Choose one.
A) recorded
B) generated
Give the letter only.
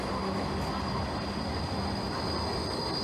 A